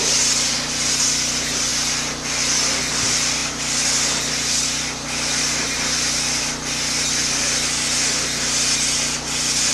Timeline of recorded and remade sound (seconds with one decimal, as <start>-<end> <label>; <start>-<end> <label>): 0.0-9.7 recorded